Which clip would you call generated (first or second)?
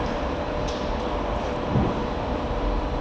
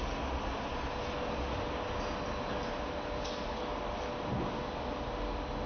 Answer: first